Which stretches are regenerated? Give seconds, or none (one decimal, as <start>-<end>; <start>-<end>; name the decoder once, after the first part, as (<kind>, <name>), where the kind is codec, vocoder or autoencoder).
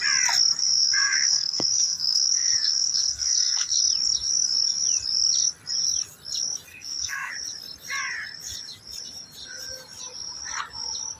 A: 0.6-3.8 (codec, SNAC); 6.7-7.3